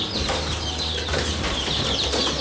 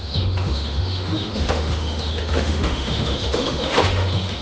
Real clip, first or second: first